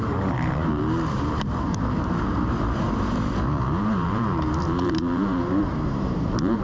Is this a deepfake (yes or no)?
yes